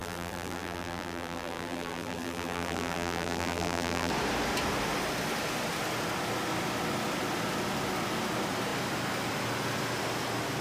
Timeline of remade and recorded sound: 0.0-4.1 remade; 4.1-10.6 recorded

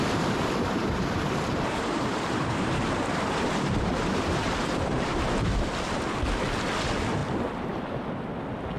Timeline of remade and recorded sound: 0.0-0.8 recorded; 0.8-5.7 remade; 5.7-8.8 recorded

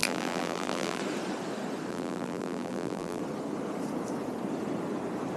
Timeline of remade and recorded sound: 0.0-1.0 remade; 1.0-1.9 recorded; 1.9-3.2 remade; 3.2-5.4 recorded

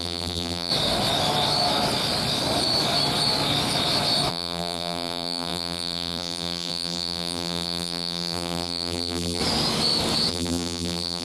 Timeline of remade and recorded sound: 0.0-0.7 remade; 0.7-4.3 recorded; 4.3-9.4 remade; 9.4-10.3 recorded; 10.3-11.2 remade

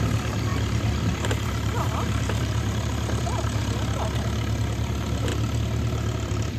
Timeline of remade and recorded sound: 0.0-0.5 recorded; 0.5-3.6 remade; 3.6-6.6 recorded

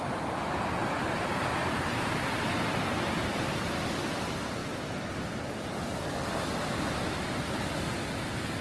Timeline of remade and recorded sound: 0.0-1.6 recorded; 1.6-2.4 remade; 2.4-4.6 recorded; 4.6-5.7 remade; 5.7-8.6 recorded

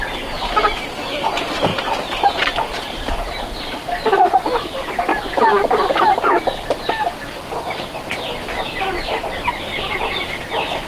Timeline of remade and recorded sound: 0.0-1.7 recorded; 1.7-3.0 remade; 3.0-9.7 recorded; 9.7-10.9 remade